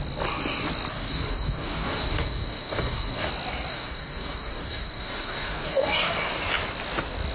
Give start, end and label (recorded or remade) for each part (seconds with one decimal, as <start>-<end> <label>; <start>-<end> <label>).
0.0-0.9 recorded; 0.9-3.3 remade; 3.3-3.7 recorded; 3.7-6.3 remade; 6.3-7.3 recorded